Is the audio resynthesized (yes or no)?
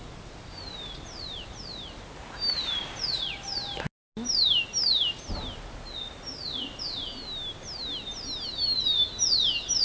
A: no